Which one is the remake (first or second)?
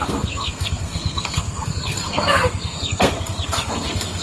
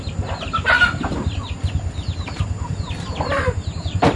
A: first